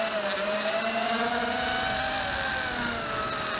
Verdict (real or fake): real